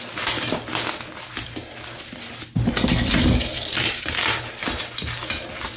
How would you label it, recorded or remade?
recorded